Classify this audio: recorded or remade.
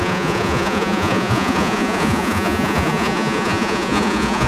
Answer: remade